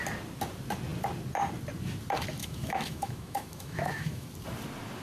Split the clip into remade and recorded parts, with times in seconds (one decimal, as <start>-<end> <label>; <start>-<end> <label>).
0.0-2.4 recorded; 2.4-4.3 remade; 4.3-5.0 recorded